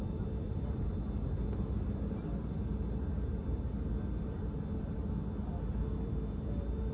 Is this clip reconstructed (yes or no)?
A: no